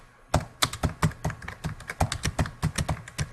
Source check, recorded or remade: recorded